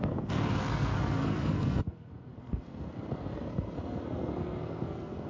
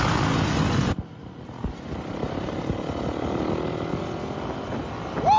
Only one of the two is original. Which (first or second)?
second